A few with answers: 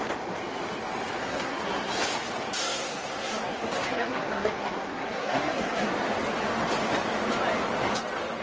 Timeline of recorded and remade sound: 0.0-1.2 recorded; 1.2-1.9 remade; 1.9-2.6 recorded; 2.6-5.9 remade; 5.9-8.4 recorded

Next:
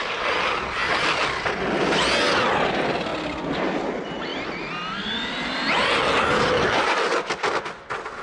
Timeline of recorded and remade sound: 0.0-8.2 recorded

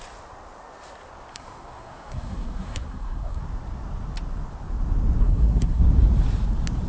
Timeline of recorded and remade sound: 0.0-1.3 recorded; 1.3-3.4 remade; 3.4-5.2 recorded; 5.2-5.8 remade; 5.8-6.9 recorded

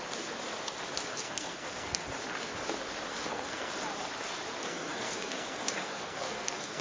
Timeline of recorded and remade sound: 0.0-1.1 recorded; 1.1-2.0 remade; 2.0-3.1 recorded; 3.1-3.7 remade; 3.7-4.6 recorded; 4.6-6.8 remade

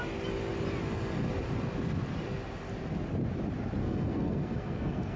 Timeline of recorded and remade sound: 0.0-3.8 recorded; 3.8-5.2 remade

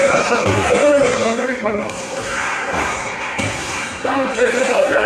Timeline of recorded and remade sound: 0.0-5.1 remade

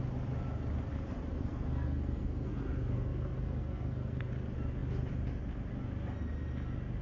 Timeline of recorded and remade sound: 0.0-1.3 recorded; 1.3-4.3 remade; 4.3-7.0 recorded